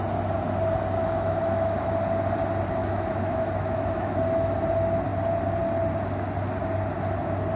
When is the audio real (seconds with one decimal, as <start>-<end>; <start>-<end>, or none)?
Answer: 0.0-1.0; 1.9-2.8; 4.5-7.6